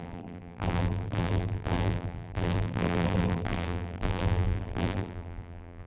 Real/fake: fake